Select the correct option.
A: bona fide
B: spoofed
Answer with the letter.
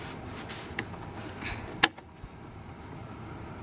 A